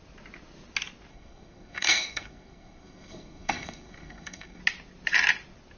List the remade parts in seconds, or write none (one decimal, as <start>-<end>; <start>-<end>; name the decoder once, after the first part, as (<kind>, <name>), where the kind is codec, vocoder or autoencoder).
1.1-4.6 (codec, SNAC)